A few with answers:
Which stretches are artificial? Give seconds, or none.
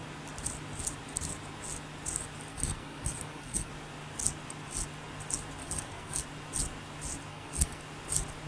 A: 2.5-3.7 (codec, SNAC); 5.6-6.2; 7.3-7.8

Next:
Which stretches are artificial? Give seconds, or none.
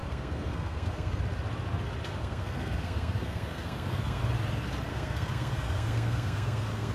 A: 0.0-1.2 (codec, SNAC); 2.2-4.2; 4.9-6.9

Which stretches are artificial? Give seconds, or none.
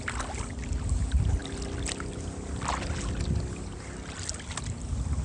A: none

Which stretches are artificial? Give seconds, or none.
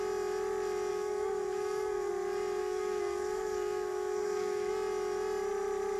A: 0.9-2.1 (codec, SNAC); 2.6-4.7